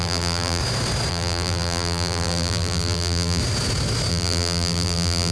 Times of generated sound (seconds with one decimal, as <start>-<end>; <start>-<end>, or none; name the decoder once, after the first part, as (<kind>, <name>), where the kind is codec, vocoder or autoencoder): 0.0-0.6 (vocoder, BigVGAN v2); 1.1-3.4; 4.1-5.3